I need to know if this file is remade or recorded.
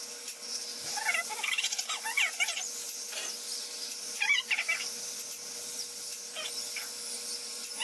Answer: recorded